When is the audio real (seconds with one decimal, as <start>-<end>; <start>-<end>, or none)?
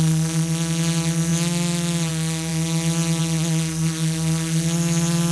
0.0-5.3